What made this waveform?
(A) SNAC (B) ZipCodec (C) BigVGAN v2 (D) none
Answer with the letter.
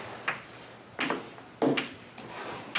D